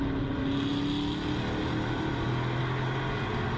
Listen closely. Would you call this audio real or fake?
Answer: real